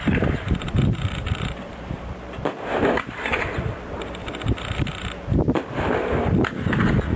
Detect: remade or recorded recorded